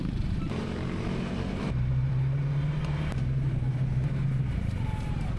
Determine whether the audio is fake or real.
fake